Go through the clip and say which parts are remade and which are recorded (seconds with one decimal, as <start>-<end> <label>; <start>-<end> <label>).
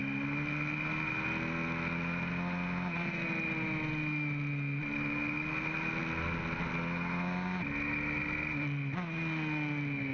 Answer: 0.0-10.1 recorded